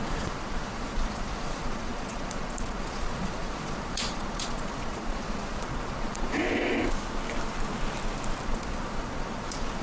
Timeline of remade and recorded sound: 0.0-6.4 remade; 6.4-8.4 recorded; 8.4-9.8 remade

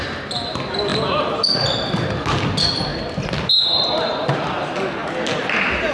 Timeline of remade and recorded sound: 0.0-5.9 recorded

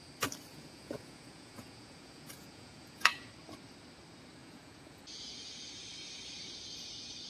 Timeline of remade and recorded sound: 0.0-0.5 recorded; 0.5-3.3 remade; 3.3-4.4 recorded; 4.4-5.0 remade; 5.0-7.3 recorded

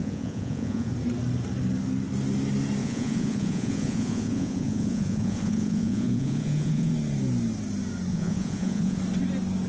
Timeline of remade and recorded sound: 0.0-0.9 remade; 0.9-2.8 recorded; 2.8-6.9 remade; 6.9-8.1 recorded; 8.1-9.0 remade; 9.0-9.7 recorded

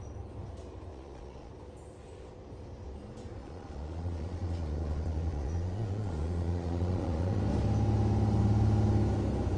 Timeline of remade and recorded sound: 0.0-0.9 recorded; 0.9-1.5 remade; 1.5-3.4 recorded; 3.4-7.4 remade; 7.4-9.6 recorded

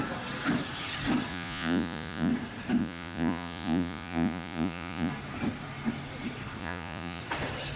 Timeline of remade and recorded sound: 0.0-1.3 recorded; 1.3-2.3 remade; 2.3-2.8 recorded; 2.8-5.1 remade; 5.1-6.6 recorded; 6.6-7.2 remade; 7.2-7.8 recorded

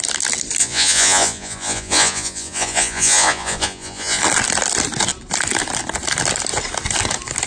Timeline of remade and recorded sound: 0.0-0.6 recorded; 0.6-4.2 remade; 4.2-7.5 recorded

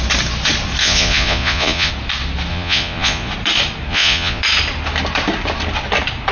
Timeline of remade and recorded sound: 0.0-0.8 recorded; 0.8-1.9 remade; 1.9-2.5 recorded; 2.5-3.3 remade; 3.3-3.9 recorded; 3.9-4.4 remade; 4.4-6.3 recorded